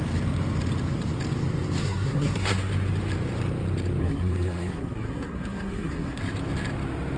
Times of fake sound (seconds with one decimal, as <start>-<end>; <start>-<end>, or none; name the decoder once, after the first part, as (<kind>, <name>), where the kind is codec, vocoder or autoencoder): 1.8-2.7 (codec, SNAC); 4.0-6.2